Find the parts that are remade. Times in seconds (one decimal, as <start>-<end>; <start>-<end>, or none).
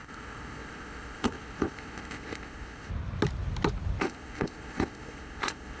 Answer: 0.0-2.9; 4.0-5.8